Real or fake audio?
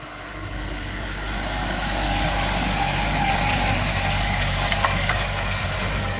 fake